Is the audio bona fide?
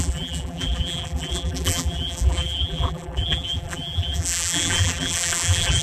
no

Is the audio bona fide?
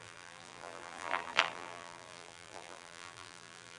no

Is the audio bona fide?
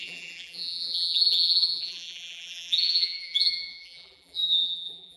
no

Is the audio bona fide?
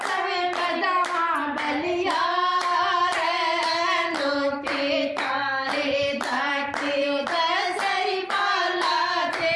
no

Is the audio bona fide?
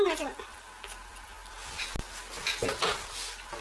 yes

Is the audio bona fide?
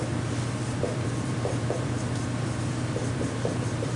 no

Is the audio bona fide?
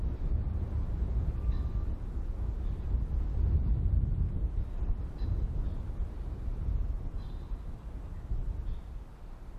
yes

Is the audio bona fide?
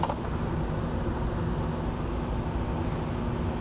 yes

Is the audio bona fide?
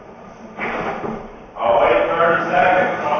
no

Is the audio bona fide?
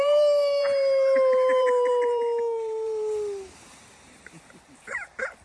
no